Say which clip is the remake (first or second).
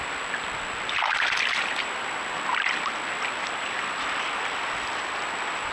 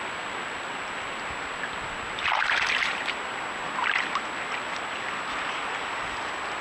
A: first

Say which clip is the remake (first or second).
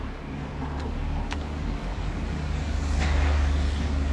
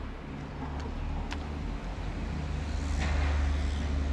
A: first